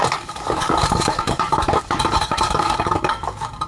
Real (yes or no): no